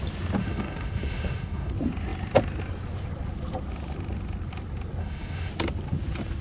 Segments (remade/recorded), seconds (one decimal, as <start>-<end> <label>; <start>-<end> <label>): 0.0-0.4 recorded; 0.4-1.7 remade; 1.7-5.0 recorded; 5.0-5.5 remade; 5.5-6.4 recorded